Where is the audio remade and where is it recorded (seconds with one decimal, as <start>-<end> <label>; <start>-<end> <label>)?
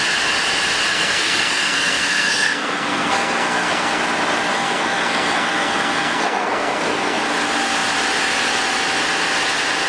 0.0-0.9 recorded; 0.9-4.0 remade; 4.0-4.5 recorded; 4.5-7.2 remade; 7.2-9.9 recorded